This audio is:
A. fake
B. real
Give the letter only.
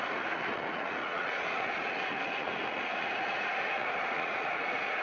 A